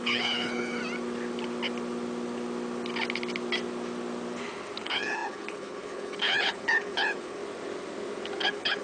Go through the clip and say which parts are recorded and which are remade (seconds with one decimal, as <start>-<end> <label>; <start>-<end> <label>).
0.0-0.8 remade; 0.8-4.8 recorded; 4.8-7.4 remade; 7.4-8.4 recorded; 8.4-8.8 remade